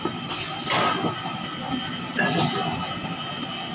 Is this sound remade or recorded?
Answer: recorded